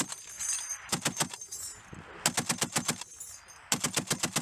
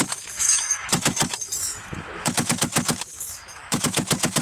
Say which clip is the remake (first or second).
second